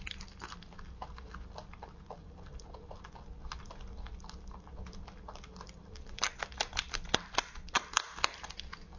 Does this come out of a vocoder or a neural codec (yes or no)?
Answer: no